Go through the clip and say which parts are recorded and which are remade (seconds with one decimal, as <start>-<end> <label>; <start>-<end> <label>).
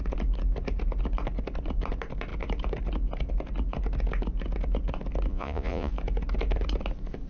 0.0-5.3 recorded; 5.3-5.9 remade; 5.9-7.3 recorded